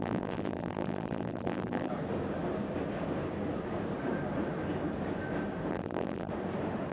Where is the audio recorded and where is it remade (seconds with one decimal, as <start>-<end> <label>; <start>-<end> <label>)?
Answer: 0.0-1.9 remade; 1.9-5.7 recorded; 5.7-6.3 remade; 6.3-6.9 recorded